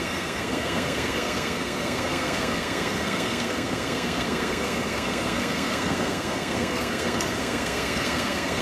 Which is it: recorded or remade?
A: remade